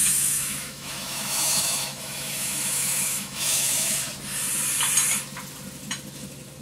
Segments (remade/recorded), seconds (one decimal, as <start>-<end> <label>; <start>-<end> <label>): 0.0-4.0 remade; 4.0-6.6 recorded